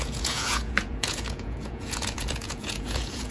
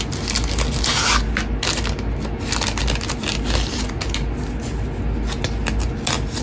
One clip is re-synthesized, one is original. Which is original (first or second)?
second